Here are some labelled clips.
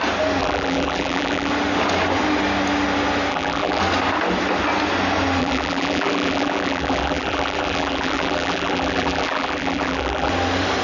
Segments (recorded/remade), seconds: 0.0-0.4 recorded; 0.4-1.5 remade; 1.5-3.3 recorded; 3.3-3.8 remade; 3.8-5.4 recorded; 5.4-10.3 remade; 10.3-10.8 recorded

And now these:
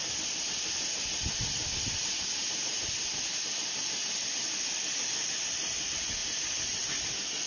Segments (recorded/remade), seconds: 0.0-4.5 recorded; 4.5-6.2 remade; 6.2-7.1 recorded; 7.1-7.5 remade

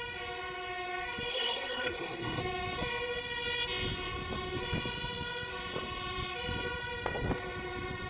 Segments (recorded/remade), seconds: 0.0-1.3 recorded; 1.3-2.4 remade; 2.4-8.1 recorded